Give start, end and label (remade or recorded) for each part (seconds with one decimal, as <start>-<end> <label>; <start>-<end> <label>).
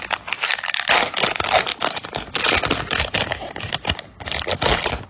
0.0-5.1 recorded